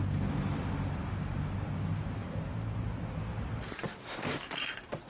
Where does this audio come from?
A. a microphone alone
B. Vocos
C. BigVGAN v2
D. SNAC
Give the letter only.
A